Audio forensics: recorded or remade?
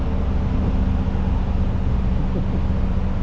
recorded